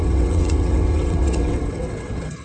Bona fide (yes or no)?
no